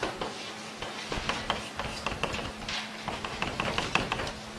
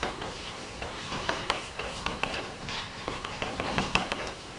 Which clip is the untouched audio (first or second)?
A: first